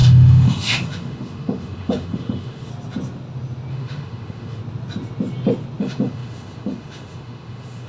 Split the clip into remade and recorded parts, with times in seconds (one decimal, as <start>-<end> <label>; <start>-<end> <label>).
0.0-2.7 remade; 2.7-3.7 recorded; 3.7-4.6 remade; 4.6-5.8 recorded; 5.8-7.9 remade